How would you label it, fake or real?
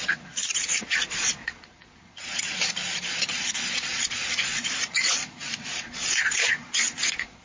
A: fake